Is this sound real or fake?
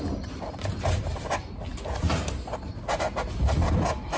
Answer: real